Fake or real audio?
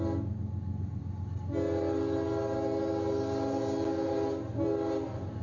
real